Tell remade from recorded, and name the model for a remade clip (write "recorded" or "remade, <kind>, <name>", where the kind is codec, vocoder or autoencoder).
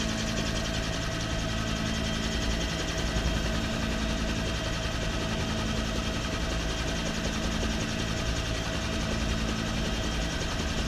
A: recorded